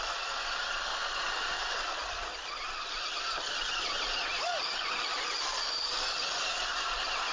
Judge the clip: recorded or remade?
recorded